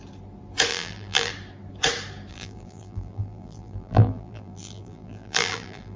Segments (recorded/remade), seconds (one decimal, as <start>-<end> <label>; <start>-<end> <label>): 0.0-0.7 recorded; 0.7-1.3 remade; 1.3-2.3 recorded; 2.3-6.0 remade